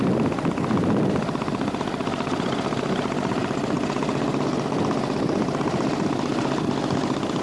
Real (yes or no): yes